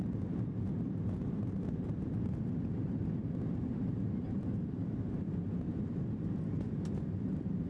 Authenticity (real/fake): fake